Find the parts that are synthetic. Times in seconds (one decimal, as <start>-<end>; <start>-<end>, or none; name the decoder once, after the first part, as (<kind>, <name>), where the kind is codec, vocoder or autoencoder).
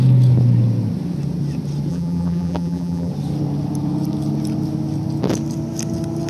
1.9-3.1 (vocoder, BigVGAN v2)